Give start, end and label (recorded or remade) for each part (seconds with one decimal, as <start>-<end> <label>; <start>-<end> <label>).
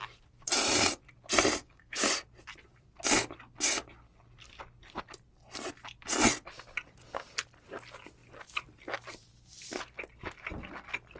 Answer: 0.0-1.6 recorded; 1.6-2.1 remade; 2.1-11.2 recorded